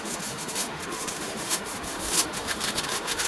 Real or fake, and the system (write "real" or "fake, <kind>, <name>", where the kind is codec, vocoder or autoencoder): fake, autoencoder, DAC-VAE